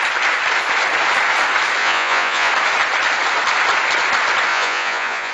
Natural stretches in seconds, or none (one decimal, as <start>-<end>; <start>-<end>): 0.0-1.8; 2.5-4.5